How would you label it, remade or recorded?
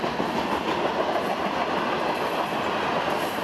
recorded